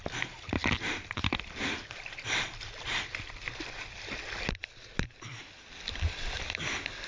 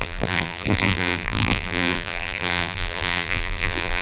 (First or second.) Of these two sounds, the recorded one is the first